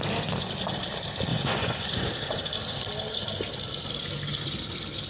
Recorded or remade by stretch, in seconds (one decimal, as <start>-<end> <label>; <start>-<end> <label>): 0.0-1.3 recorded; 1.3-2.1 remade; 2.1-5.1 recorded